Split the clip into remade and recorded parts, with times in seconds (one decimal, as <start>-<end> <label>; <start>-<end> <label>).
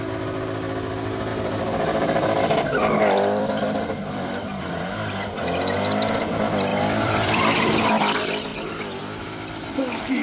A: 0.0-1.3 recorded; 1.3-4.8 remade; 4.8-6.7 recorded; 6.7-7.9 remade; 7.9-10.2 recorded